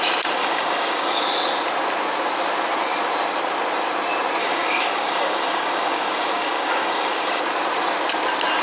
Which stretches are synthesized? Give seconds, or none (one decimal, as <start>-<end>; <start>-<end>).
0.4-1.2; 4.4-7.4